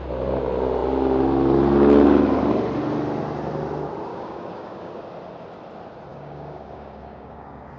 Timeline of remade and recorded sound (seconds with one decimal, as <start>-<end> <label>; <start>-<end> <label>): 0.0-4.1 recorded; 4.1-4.9 remade; 4.9-6.1 recorded; 6.1-7.8 remade